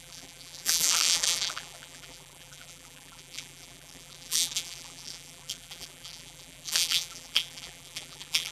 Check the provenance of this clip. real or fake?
fake